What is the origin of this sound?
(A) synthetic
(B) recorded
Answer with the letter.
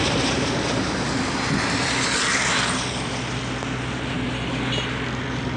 B